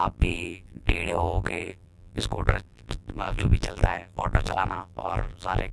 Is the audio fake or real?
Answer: fake